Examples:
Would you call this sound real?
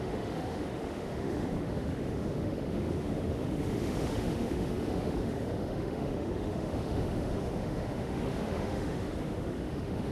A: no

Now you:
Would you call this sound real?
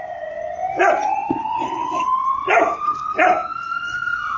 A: yes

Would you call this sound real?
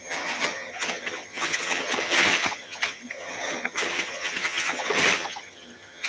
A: no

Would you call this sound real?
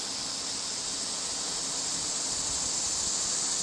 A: yes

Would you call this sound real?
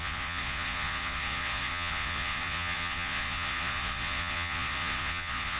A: no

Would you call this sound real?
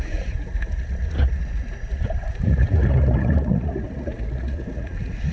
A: no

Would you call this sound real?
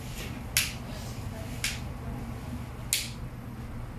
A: yes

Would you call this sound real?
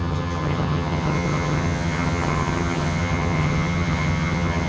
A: no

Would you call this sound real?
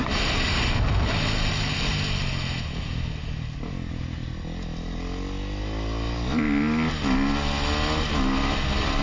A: yes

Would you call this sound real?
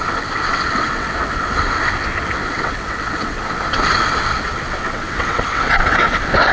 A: no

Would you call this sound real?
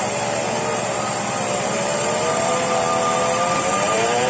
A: no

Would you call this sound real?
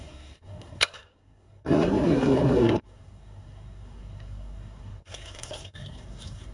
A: no